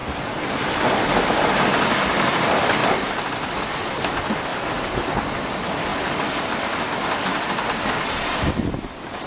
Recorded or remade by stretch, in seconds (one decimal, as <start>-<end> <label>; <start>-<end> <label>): 0.0-9.3 recorded